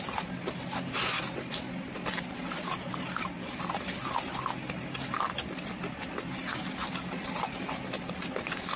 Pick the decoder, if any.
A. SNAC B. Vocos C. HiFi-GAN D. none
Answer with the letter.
D